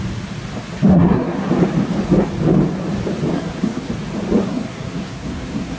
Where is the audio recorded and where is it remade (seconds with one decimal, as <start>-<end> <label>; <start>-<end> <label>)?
0.0-0.9 recorded; 0.9-1.5 remade; 1.5-3.3 recorded; 3.3-3.9 remade; 3.9-4.4 recorded; 4.4-5.8 remade

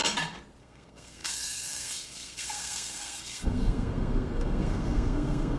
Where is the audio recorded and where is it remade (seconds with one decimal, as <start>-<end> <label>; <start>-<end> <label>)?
0.0-0.6 recorded; 0.6-5.6 remade

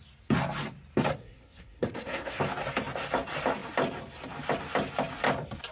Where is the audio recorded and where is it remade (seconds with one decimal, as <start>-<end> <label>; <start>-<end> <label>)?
0.0-1.1 recorded; 1.1-2.4 remade; 2.4-5.7 recorded

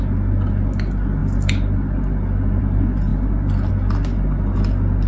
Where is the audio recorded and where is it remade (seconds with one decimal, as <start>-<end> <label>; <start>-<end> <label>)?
0.0-5.1 recorded

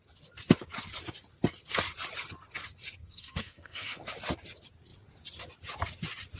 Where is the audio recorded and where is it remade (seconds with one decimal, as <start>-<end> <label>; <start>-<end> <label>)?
0.0-3.0 recorded; 3.0-4.1 remade; 4.1-6.4 recorded

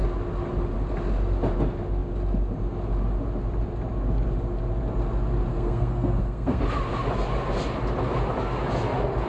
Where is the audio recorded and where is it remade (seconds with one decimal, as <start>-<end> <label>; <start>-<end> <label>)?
0.0-5.5 recorded; 5.5-6.6 remade; 6.6-9.3 recorded

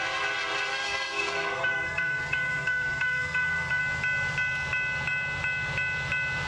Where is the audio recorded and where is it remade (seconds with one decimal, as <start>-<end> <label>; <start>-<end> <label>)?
0.0-0.7 recorded; 0.7-3.8 remade; 3.8-6.5 recorded

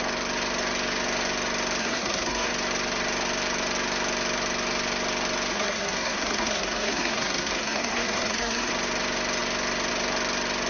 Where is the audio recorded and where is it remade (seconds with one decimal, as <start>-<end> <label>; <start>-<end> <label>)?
0.0-1.8 recorded; 1.8-2.5 remade; 2.5-5.5 recorded; 5.5-8.7 remade; 8.7-10.7 recorded